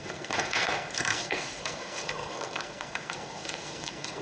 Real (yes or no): no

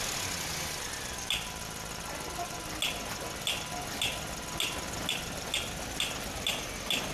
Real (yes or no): yes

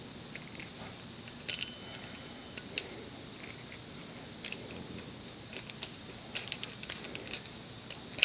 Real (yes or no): yes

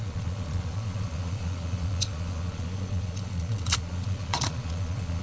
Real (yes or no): no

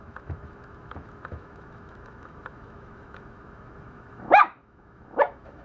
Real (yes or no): no